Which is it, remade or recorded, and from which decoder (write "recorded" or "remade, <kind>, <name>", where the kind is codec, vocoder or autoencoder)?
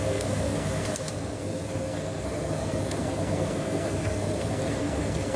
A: remade, codec, SNAC